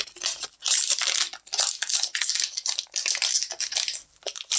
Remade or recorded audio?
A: recorded